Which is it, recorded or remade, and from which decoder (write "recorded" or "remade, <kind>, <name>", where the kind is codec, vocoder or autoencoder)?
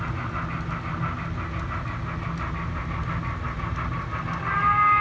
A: recorded